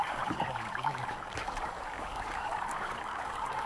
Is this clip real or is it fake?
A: fake